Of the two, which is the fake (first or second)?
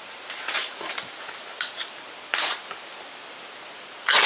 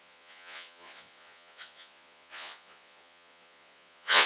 second